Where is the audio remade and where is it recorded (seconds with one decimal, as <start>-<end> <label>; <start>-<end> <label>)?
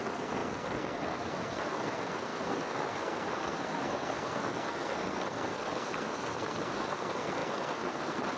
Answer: 0.0-8.4 remade